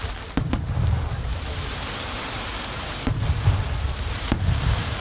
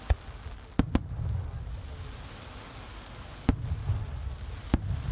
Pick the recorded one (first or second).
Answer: second